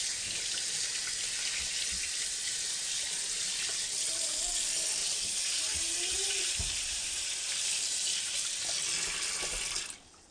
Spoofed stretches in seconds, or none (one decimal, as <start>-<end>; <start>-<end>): 5.0-8.4